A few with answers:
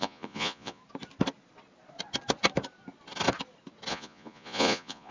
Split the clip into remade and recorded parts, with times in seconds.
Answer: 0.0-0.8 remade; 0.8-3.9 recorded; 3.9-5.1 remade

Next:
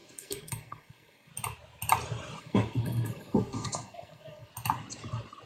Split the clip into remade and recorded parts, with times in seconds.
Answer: 0.0-1.3 remade; 1.3-2.4 recorded; 2.4-4.5 remade; 4.5-5.5 recorded

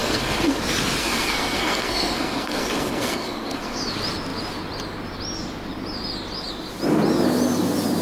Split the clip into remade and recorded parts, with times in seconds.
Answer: 0.0-0.6 remade; 0.6-1.0 recorded; 1.0-3.8 remade; 3.8-8.0 recorded

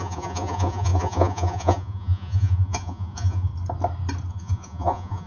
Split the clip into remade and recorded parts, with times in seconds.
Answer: 0.0-3.5 remade; 3.5-4.3 recorded; 4.3-5.3 remade